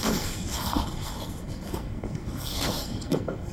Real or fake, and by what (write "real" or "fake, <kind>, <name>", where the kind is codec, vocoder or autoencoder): fake, codec, SNAC